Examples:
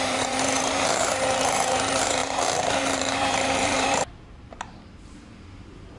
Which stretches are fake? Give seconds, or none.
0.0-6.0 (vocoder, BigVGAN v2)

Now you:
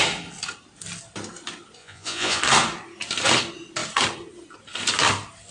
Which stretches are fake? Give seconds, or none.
1.8-2.4 (vocoder, Vocos)

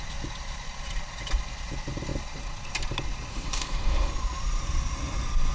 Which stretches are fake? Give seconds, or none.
3.3-4.1 (autoencoder, DAC-VAE)